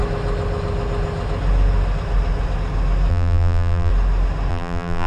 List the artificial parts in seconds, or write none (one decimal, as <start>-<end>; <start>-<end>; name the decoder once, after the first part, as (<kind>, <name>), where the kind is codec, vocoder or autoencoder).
3.1-3.9 (vocoder, BigVGAN v2); 4.5-5.1